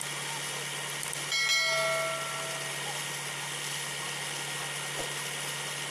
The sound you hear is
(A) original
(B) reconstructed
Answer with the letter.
A